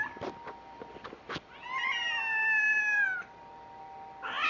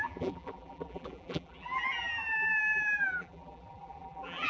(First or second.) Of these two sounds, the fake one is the second